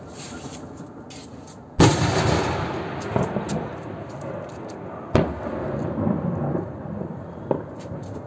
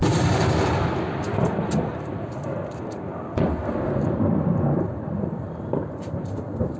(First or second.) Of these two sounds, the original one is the first